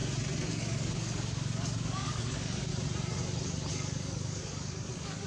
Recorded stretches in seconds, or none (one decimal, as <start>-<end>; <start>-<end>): 0.0-0.5; 2.7-3.7